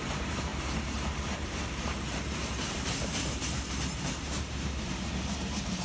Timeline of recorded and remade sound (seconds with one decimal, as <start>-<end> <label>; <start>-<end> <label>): 0.0-5.8 remade